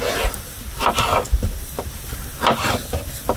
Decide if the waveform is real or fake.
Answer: real